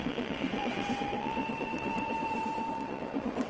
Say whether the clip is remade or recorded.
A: remade